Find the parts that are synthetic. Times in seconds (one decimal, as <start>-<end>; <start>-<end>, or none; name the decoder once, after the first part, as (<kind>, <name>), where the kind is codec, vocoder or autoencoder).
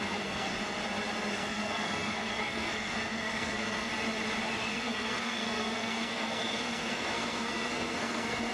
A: 0.0-0.5 (codec, SNAC); 1.3-3.9; 4.7-8.5